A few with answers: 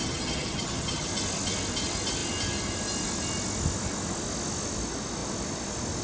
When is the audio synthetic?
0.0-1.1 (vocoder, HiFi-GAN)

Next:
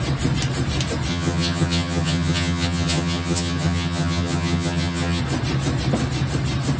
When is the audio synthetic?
1.1-5.2 (vocoder, HiFi-GAN)

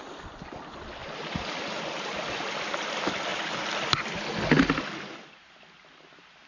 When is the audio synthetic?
none

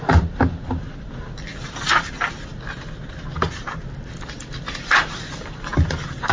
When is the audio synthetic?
none

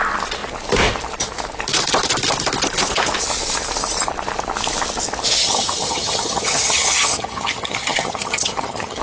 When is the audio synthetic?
5.4-9.0 (vocoder, HiFi-GAN)

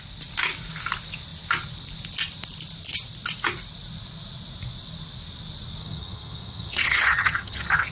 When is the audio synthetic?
5.8-7.9 (vocoder, HiFi-GAN)